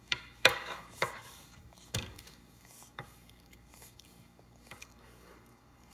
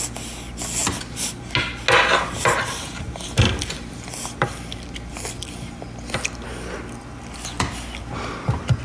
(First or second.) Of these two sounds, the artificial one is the first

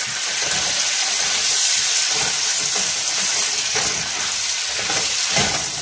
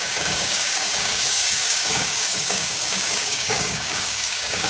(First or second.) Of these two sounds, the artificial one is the second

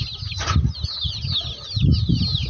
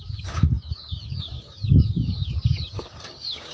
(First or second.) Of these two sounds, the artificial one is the second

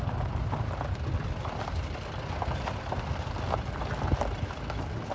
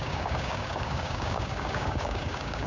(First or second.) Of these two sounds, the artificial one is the second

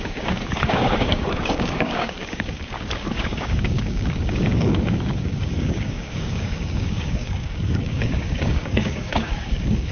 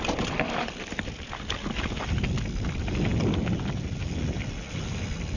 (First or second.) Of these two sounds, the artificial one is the first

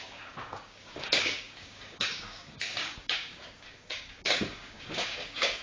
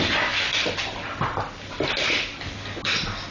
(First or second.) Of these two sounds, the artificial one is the first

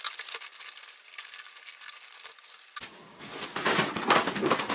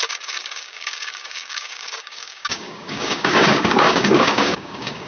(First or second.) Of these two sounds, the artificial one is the second